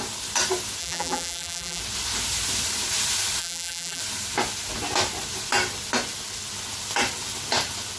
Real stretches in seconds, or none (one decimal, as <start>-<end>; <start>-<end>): 0.0-0.8; 1.8-3.4; 4.0-8.0